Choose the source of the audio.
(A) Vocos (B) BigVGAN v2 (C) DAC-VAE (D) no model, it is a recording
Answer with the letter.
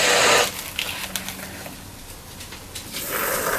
D